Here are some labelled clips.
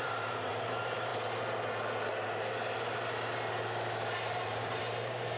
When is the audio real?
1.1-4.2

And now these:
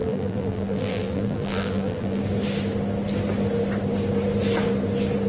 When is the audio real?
2.2-5.3

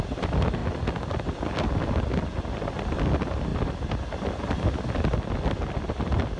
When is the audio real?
0.0-6.4

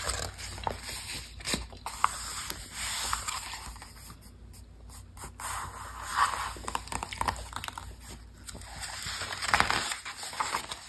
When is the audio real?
0.0-10.9